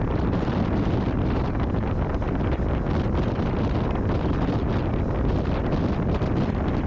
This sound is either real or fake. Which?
real